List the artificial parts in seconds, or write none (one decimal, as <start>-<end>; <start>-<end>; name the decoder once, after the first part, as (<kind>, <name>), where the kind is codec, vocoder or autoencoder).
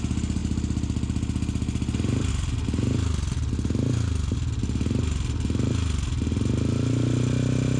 none